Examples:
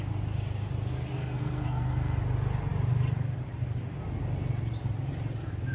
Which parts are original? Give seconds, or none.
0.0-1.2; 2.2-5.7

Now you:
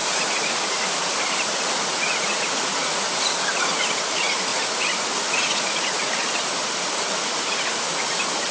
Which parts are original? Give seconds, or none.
none

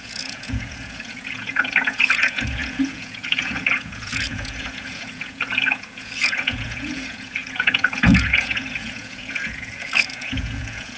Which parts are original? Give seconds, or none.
none